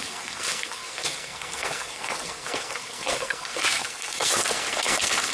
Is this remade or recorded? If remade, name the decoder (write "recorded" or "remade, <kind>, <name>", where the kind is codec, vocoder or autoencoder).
remade, codec, SNAC